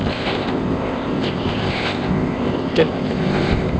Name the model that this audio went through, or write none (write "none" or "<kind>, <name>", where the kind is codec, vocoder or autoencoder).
codec, ZipCodec